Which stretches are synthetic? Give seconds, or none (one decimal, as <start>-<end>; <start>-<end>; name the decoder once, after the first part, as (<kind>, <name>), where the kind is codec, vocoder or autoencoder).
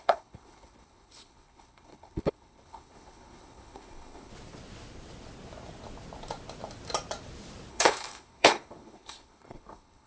0.0-4.3 (codec, HILCodec); 7.7-10.1